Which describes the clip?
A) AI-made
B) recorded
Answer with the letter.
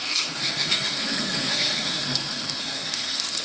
A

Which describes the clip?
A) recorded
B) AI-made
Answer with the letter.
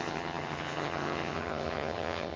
B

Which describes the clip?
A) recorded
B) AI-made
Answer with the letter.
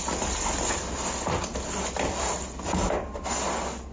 A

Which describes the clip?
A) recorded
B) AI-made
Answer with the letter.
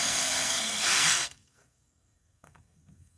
B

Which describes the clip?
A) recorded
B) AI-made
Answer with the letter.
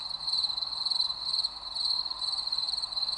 A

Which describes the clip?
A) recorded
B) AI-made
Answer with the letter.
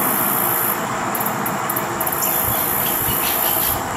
A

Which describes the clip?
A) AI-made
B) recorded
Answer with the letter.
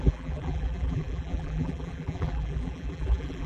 A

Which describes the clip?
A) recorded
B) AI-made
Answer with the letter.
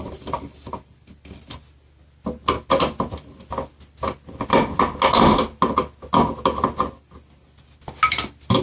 A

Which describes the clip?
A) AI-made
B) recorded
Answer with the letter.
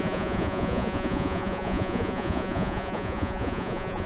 A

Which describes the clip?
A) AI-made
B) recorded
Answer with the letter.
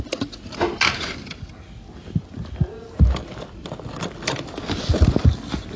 B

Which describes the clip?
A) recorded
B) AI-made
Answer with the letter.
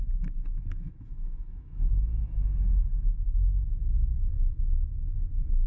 B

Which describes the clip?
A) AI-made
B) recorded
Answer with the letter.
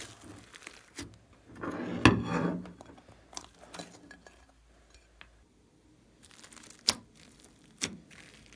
B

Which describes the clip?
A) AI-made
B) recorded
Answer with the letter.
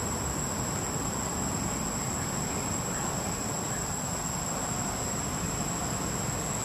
B